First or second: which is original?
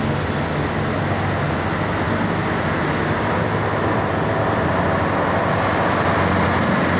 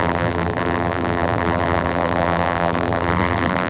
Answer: first